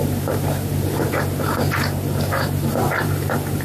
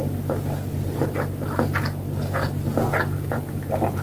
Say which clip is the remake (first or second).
first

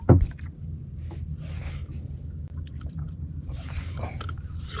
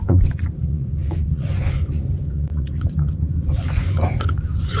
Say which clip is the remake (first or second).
second